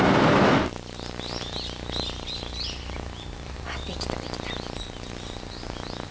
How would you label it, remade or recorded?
recorded